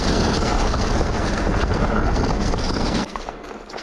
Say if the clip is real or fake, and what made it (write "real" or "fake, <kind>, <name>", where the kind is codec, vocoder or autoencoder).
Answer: fake, codec, SNAC